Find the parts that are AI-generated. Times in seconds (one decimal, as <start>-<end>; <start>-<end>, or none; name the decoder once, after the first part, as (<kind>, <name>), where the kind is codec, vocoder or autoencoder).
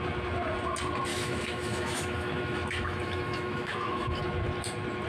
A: 1.1-4.2 (autoencoder, DAC-VAE)